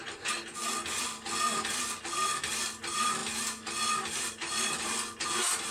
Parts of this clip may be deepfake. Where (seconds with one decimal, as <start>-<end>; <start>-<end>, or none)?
none